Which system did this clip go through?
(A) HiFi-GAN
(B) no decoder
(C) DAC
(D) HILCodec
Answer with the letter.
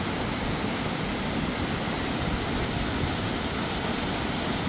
B